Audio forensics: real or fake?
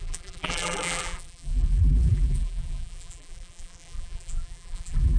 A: fake